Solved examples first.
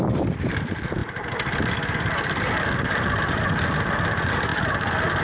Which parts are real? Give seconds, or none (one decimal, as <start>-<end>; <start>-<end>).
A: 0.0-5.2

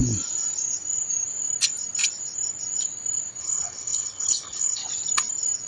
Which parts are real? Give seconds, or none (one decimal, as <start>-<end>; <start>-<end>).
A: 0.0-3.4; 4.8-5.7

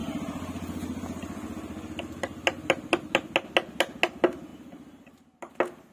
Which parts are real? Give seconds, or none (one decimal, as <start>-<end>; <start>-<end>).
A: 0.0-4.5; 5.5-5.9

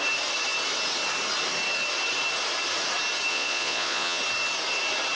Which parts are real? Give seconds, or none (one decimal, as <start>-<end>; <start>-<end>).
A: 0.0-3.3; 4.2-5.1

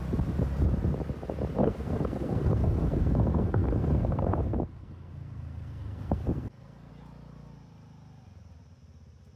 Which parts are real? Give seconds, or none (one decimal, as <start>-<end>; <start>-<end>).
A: 0.0-1.6; 6.9-9.4